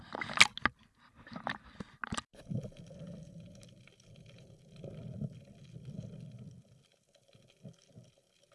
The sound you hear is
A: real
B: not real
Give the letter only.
A